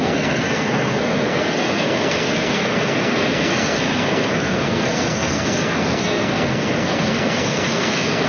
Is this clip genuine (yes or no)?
no